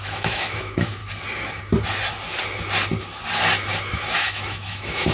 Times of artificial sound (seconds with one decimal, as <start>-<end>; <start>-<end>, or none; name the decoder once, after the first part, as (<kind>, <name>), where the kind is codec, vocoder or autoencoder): 0.0-1.0 (autoencoder, DAC-VAE); 3.9-5.1